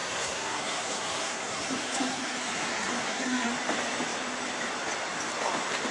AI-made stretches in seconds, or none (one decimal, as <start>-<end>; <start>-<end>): 0.0-3.5